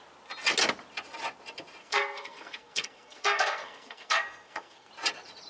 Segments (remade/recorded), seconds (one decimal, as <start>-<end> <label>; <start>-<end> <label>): 0.0-1.8 recorded; 1.8-4.9 remade; 4.9-5.5 recorded